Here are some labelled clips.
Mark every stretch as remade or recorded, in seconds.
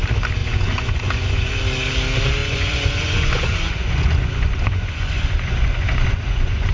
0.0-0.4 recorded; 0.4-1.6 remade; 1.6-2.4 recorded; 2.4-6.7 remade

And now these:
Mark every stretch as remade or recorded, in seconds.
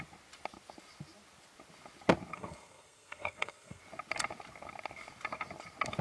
0.0-2.3 recorded; 2.3-3.8 remade; 3.8-6.0 recorded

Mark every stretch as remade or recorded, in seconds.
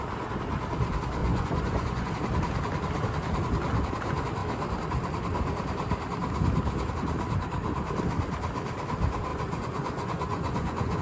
0.0-1.2 recorded; 1.2-2.1 remade; 2.1-9.3 recorded; 9.3-11.0 remade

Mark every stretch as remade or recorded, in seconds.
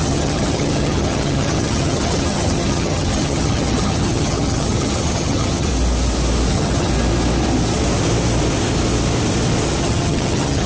0.0-5.7 remade; 5.7-6.5 recorded; 6.5-6.9 remade; 6.9-9.8 recorded; 9.8-10.7 remade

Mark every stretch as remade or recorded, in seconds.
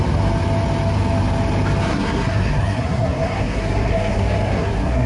0.0-1.8 recorded; 1.8-5.1 remade